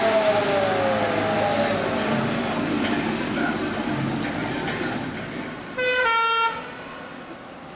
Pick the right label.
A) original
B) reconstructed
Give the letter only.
A